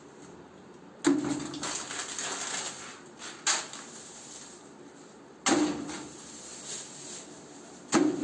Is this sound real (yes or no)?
yes